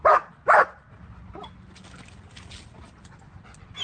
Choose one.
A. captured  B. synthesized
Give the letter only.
A